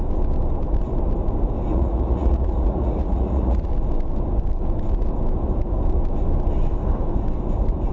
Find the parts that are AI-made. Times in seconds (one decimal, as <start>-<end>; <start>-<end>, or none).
1.7-3.7